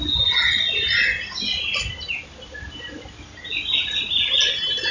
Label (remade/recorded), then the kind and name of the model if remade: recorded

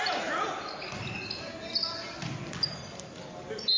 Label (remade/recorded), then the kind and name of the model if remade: recorded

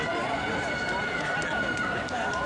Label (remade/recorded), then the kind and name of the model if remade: recorded